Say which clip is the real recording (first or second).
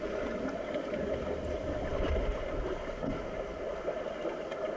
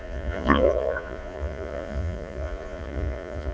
first